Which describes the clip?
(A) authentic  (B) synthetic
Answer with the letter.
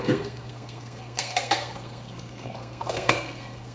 B